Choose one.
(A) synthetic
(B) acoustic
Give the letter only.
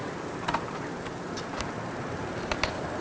A